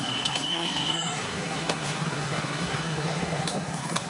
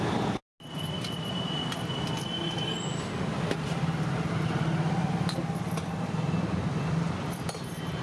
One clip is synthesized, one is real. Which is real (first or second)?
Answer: second